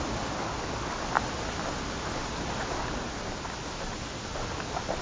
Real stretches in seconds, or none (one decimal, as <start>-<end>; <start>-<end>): 0.0-5.0